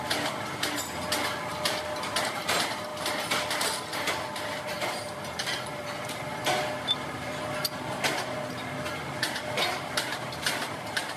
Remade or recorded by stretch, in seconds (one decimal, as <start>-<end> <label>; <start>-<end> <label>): 0.0-1.5 recorded; 1.5-2.4 remade; 2.4-11.2 recorded